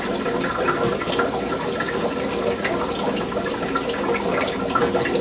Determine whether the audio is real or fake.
real